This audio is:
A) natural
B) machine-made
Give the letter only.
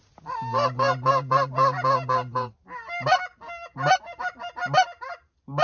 A